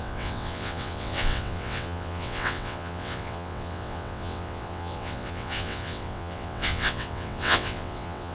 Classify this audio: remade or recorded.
remade